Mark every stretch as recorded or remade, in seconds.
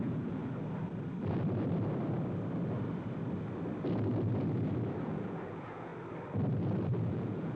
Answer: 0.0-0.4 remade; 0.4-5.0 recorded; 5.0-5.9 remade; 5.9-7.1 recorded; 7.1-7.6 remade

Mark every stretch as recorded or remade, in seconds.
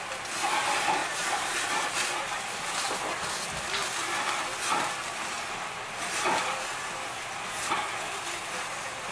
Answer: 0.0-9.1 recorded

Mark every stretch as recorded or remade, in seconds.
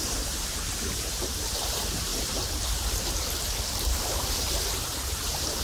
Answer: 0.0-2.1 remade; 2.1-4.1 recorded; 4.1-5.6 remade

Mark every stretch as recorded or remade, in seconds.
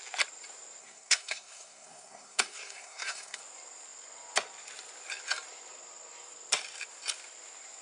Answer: 0.0-0.8 recorded; 0.8-3.4 remade; 3.4-7.8 recorded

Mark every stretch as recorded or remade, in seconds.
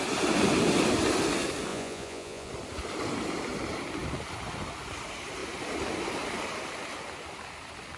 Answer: 0.0-1.7 recorded; 1.7-2.5 remade; 2.5-8.0 recorded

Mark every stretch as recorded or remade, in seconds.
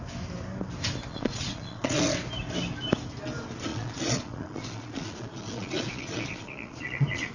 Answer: 0.0-1.1 recorded; 1.1-2.0 remade; 2.0-3.7 recorded; 3.7-7.3 remade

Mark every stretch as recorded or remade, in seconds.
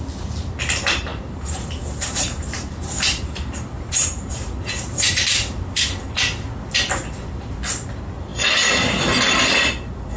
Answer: 0.0-1.1 recorded; 1.1-5.2 remade; 5.2-10.2 recorded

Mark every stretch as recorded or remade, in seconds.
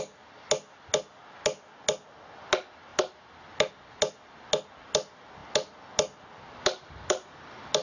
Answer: 0.0-7.8 recorded